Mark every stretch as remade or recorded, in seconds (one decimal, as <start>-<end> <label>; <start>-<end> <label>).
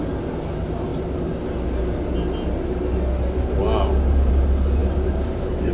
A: 0.0-4.8 recorded; 4.8-5.7 remade